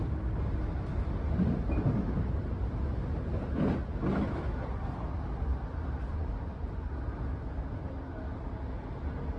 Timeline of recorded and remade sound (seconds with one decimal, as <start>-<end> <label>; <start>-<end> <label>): 0.0-6.1 recorded; 6.1-6.9 remade; 6.9-9.4 recorded